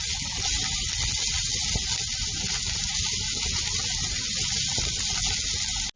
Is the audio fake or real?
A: real